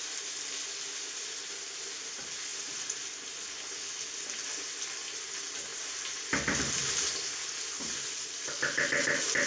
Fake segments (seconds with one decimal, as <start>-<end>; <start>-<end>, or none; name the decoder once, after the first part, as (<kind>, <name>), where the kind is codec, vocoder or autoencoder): none